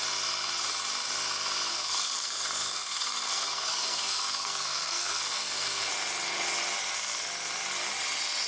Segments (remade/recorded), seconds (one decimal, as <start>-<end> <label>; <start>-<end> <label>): 0.0-1.7 recorded; 1.7-5.9 remade; 5.9-8.5 recorded